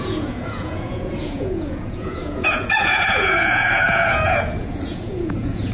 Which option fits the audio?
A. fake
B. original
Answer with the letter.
A